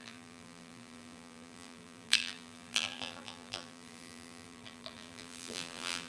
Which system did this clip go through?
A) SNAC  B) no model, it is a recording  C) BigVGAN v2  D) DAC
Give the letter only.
C